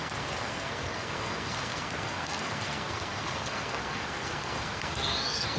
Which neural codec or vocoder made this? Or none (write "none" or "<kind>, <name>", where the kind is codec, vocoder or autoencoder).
codec, SNAC